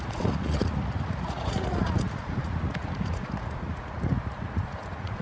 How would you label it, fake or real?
fake